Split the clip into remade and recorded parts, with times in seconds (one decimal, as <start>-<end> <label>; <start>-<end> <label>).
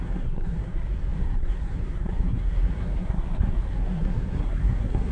0.0-5.1 remade